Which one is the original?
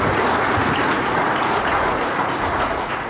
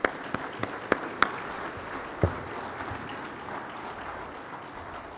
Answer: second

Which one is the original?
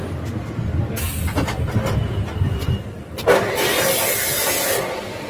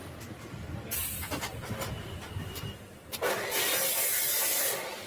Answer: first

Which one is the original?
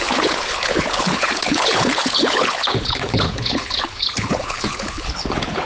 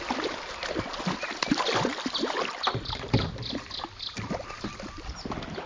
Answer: second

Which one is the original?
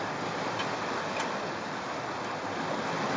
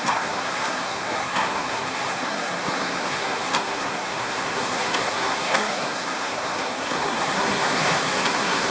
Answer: first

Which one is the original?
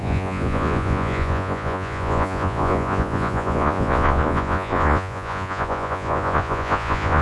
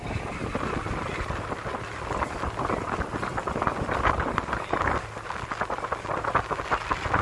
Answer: second